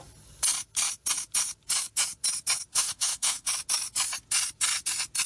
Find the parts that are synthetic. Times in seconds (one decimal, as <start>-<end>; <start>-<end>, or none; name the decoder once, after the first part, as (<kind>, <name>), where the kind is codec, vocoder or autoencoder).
2.7-3.5 (autoencoder, DAC-VAE)